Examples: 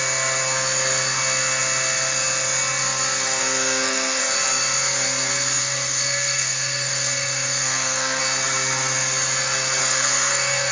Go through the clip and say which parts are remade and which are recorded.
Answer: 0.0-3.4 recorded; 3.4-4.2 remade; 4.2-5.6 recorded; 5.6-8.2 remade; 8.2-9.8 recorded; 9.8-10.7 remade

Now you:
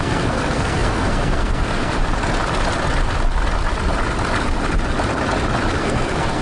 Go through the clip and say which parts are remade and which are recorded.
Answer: 0.0-2.0 remade; 2.0-5.8 recorded; 5.8-6.4 remade